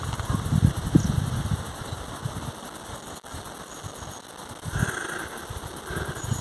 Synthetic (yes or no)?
no